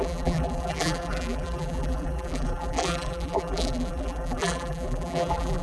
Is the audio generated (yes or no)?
yes